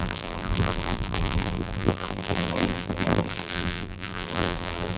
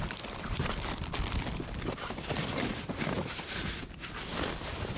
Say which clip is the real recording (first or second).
second